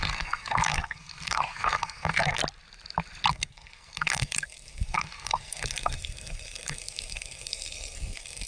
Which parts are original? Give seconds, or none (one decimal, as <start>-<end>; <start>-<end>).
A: 2.4-3.3